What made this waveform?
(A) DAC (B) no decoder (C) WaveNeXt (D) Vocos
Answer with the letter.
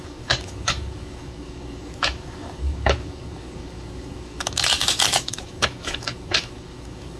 A